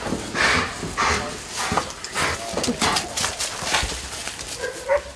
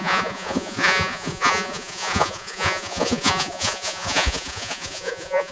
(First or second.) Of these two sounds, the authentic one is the first